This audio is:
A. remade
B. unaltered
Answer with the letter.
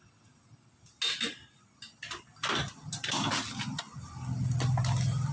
B